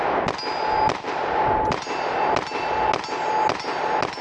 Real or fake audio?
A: real